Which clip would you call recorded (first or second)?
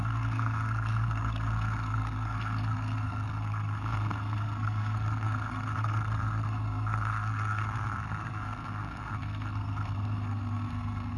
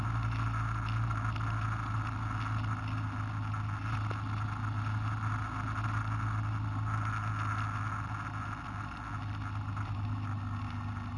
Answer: second